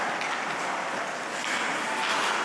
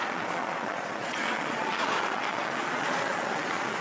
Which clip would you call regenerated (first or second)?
second